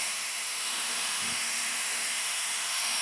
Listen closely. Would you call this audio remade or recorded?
remade